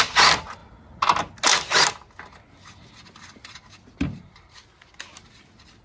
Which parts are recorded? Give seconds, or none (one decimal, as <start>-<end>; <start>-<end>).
0.0-5.8